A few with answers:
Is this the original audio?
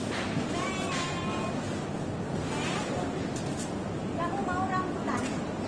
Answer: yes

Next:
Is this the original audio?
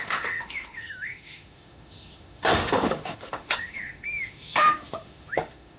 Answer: no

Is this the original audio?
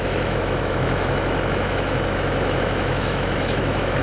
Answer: no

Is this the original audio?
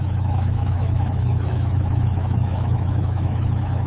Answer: no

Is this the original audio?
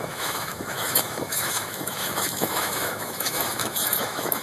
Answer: no